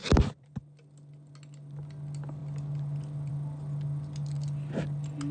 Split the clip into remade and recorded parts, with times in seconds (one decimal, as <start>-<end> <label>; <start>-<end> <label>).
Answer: 0.0-0.5 remade; 0.5-5.3 recorded